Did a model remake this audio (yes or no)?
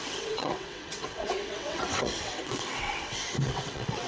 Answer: yes